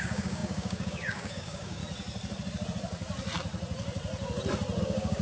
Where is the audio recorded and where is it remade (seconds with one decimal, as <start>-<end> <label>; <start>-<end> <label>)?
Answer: 0.0-1.8 remade; 1.8-4.8 recorded; 4.8-5.2 remade